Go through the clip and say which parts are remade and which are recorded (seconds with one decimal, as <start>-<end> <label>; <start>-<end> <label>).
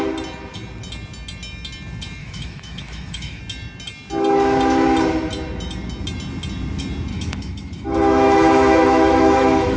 0.0-2.2 recorded; 2.2-3.4 remade; 3.4-7.1 recorded; 7.1-9.8 remade